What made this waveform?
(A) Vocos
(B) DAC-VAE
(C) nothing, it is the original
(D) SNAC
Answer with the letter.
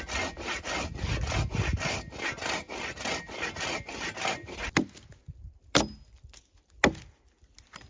C